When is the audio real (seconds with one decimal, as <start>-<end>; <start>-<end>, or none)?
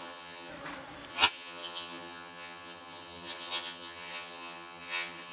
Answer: 0.5-1.1